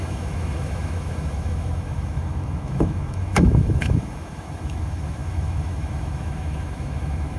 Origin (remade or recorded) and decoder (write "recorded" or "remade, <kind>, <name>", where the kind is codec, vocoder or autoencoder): remade, autoencoder, DAC-VAE